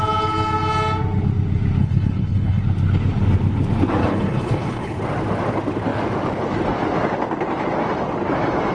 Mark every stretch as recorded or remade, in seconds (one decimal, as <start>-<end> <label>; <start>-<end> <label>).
0.0-1.8 recorded; 1.8-2.6 remade; 2.6-4.0 recorded; 4.0-5.0 remade; 5.0-8.7 recorded